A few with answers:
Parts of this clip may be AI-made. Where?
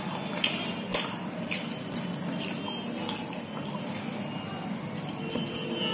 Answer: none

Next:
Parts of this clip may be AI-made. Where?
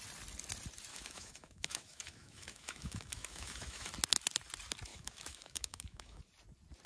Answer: 0.9-3.9 (autoencoder, DAC-VAE); 4.9-6.2